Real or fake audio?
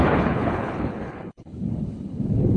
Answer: fake